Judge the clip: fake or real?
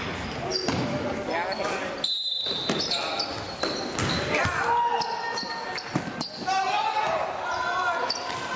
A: real